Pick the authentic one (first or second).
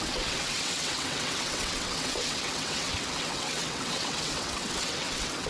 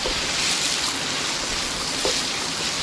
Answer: second